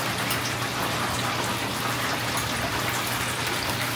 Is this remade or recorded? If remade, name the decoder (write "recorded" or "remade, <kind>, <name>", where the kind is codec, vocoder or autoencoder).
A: recorded